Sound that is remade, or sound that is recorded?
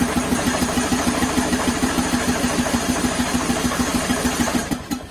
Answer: remade